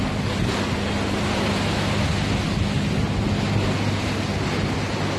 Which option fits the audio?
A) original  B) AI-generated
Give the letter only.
A